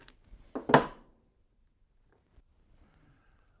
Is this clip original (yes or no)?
yes